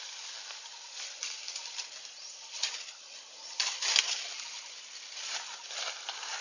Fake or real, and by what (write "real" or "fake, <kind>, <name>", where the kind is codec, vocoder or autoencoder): real